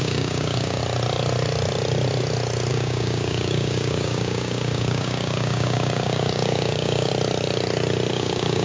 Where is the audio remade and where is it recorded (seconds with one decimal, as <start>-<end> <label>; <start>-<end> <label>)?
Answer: 0.0-0.8 remade; 0.8-2.7 recorded; 2.7-7.1 remade; 7.1-8.1 recorded; 8.1-8.6 remade

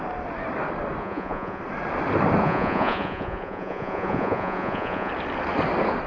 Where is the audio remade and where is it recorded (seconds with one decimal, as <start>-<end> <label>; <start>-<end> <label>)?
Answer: 0.0-1.0 recorded; 1.0-1.6 remade; 1.6-2.4 recorded; 2.4-5.1 remade; 5.1-6.1 recorded

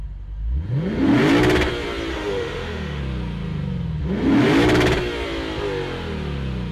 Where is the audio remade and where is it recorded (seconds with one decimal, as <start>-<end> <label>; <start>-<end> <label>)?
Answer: 0.0-2.1 recorded; 2.1-3.0 remade; 3.0-6.7 recorded

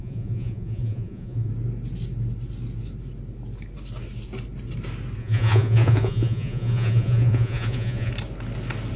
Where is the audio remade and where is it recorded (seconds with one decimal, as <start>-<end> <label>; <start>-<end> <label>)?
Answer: 0.0-1.5 remade; 1.5-5.2 recorded; 5.2-8.1 remade; 8.1-9.0 recorded

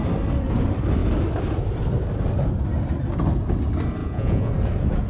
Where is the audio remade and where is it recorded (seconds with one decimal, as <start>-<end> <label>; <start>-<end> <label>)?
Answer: 0.0-4.0 recorded; 4.0-4.5 remade; 4.5-5.1 recorded

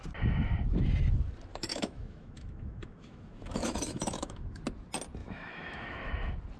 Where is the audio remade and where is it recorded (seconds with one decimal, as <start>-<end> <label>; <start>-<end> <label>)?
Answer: 0.0-1.5 recorded; 1.5-4.6 remade; 4.6-5.2 recorded; 5.2-6.1 remade; 6.1-6.6 recorded

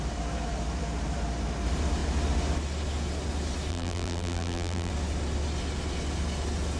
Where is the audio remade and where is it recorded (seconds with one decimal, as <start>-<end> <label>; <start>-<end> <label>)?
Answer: 0.0-3.7 recorded; 3.7-4.9 remade; 4.9-6.8 recorded